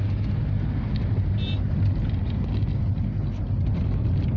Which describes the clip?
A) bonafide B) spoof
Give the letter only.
A